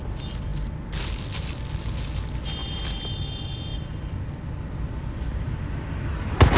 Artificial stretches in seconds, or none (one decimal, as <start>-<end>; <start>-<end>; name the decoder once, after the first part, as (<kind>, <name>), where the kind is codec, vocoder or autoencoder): 3.7-5.5 (vocoder, BigVGAN v2)